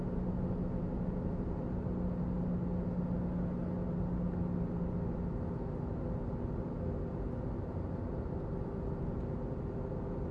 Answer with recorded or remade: recorded